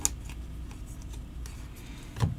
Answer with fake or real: real